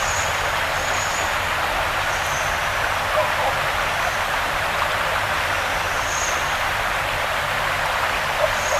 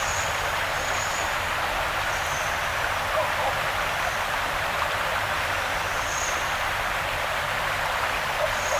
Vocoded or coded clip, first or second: second